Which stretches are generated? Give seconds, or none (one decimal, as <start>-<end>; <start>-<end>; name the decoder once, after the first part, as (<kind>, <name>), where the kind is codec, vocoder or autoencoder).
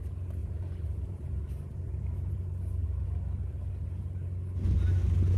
0.4-2.3 (vocoder, BigVGAN v2)